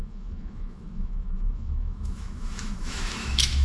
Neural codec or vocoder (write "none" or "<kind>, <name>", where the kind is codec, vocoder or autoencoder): autoencoder, DAC-VAE